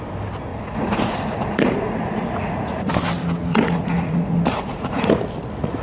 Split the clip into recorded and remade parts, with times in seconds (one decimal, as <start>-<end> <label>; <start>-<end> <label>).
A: 0.0-0.5 recorded; 0.5-2.9 remade; 2.9-3.5 recorded; 3.5-5.1 remade; 5.1-5.8 recorded